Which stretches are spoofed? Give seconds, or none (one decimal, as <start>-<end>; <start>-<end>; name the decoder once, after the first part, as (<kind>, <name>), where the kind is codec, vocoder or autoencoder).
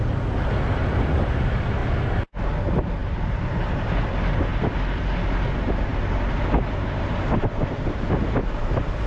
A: none